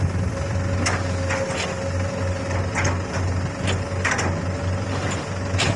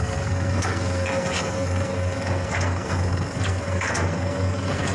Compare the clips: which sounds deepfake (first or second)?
second